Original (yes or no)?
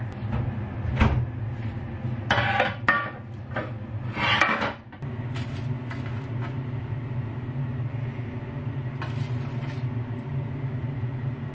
yes